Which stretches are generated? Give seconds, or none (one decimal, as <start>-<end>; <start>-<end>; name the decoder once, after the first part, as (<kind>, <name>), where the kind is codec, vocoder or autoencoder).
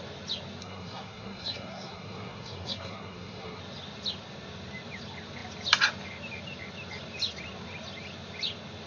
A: 0.6-3.6 (codec, SNAC)